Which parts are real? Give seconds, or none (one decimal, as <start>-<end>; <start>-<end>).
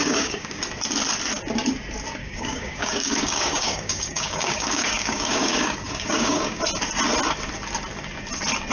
0.6-2.2; 6.6-8.7